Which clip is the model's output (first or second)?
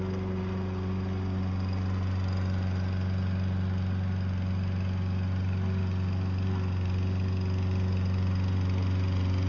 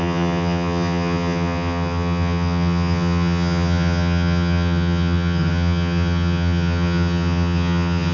second